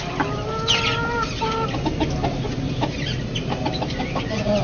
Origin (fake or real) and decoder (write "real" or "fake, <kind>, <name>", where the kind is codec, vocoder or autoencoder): real